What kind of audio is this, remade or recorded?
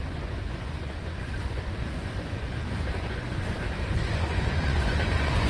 remade